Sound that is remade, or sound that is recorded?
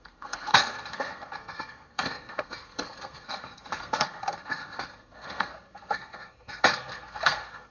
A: remade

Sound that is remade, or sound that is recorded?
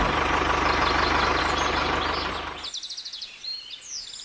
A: recorded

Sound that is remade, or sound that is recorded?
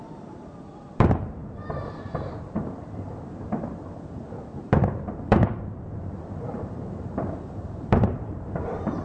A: remade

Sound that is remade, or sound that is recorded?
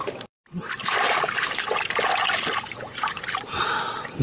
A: recorded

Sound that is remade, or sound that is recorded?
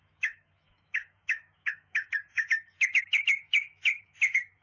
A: remade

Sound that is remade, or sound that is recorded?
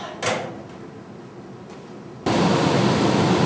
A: recorded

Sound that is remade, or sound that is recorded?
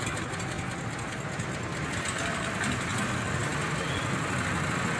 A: recorded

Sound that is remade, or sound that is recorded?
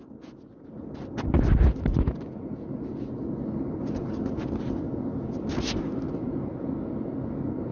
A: recorded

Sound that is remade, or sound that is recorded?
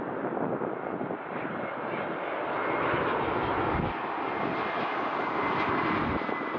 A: recorded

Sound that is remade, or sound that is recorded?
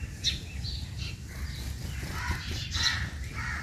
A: remade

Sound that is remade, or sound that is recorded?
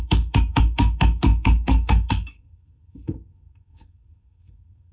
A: remade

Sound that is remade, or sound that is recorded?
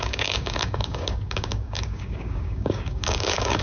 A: remade